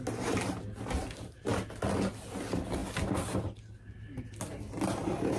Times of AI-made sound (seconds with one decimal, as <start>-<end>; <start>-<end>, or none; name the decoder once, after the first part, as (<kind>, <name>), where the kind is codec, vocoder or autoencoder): none